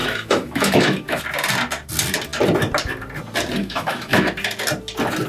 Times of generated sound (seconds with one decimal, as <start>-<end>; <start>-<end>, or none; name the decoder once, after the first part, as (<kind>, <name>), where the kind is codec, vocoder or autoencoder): 0.0-1.2 (autoencoder, DAC-VAE); 3.6-4.3